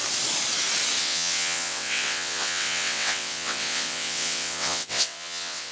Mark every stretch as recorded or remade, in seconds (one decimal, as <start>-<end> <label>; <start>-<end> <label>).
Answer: 0.0-1.0 recorded; 1.0-5.7 remade